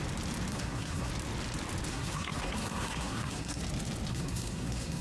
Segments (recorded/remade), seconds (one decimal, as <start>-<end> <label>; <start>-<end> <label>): 0.0-0.5 recorded; 0.5-1.1 remade; 1.1-1.9 recorded; 1.9-3.6 remade; 3.6-4.1 recorded; 4.1-5.0 remade